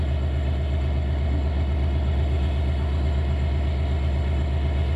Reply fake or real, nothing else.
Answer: real